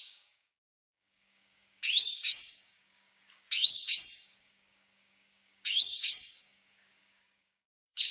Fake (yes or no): yes